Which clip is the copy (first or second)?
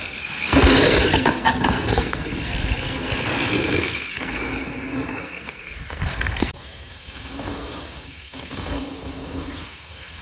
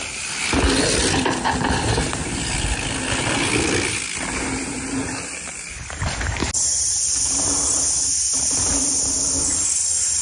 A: first